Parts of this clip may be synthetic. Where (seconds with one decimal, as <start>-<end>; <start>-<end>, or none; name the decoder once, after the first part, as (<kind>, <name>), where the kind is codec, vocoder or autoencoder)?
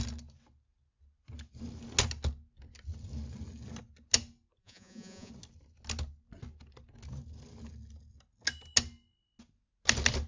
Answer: 4.6-5.3 (vocoder, Vocos)